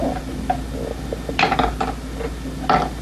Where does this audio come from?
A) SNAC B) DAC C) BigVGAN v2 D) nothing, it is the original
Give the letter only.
D